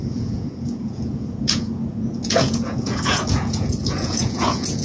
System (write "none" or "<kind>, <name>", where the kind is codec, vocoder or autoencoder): vocoder, Vocos